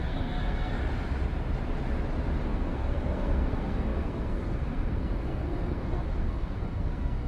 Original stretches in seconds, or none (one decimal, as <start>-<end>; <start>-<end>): 0.8-2.5